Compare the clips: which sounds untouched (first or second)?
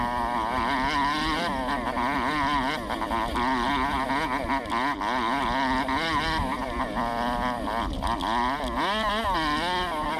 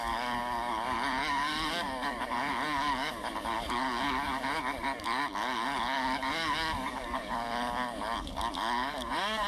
first